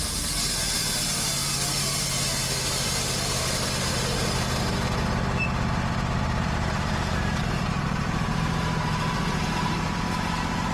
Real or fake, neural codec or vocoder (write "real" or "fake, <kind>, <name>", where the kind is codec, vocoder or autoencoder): fake, vocoder, BigVGAN v2